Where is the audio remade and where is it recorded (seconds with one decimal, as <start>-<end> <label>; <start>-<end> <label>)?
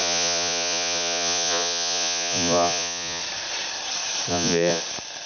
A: 0.0-3.2 remade; 3.2-4.3 recorded; 4.3-4.8 remade; 4.8-5.3 recorded